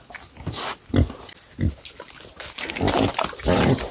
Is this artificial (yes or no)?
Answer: no